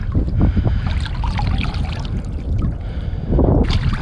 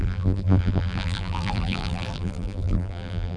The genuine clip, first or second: first